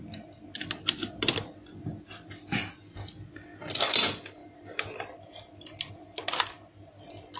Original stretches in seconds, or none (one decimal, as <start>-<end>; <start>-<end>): 0.0-7.4